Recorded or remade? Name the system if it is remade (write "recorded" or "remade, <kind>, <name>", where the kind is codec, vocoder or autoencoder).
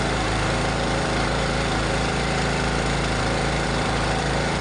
remade, vocoder, BigVGAN v2